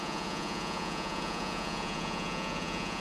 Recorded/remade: remade